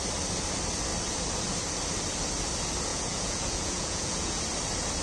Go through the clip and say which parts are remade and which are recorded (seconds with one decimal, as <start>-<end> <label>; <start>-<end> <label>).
0.0-2.9 recorded; 2.9-4.4 remade; 4.4-5.0 recorded